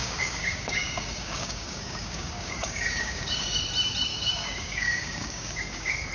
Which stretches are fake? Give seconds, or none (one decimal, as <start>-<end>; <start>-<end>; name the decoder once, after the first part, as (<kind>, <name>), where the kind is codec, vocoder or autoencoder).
0.0-3.6 (codec, DAC); 4.1-6.1